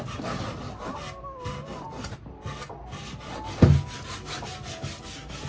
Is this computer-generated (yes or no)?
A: no